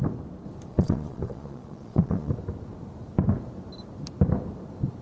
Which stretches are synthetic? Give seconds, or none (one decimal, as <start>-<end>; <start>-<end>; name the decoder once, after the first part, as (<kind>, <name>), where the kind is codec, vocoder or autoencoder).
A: 0.7-2.3 (vocoder, Vocos)